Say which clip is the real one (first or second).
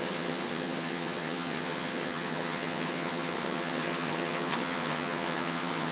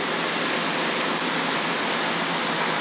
second